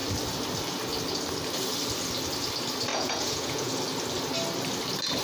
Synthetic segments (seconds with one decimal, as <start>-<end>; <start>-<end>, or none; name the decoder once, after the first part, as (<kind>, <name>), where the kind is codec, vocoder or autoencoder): 2.9-3.7 (vocoder, Vocos)